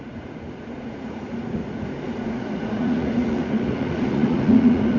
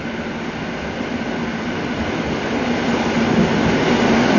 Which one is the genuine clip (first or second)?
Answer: second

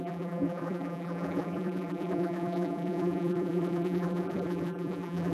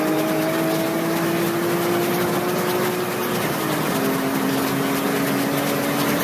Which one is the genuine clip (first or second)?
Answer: second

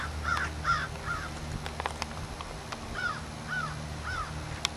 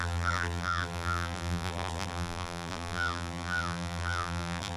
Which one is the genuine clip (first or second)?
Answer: first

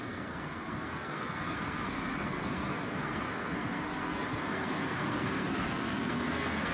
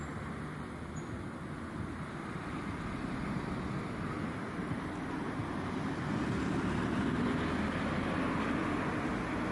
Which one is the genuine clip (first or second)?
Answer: second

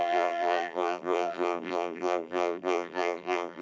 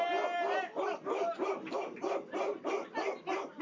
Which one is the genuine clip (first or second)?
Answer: second